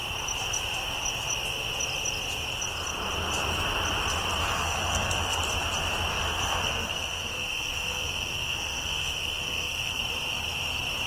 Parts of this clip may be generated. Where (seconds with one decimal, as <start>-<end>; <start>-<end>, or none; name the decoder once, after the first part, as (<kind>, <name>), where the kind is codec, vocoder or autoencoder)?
4.4-5.4 (codec, SNAC); 6.1-10.0